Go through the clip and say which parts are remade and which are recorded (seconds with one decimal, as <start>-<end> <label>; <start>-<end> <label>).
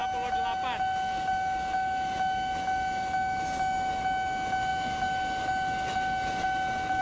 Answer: 0.0-7.0 recorded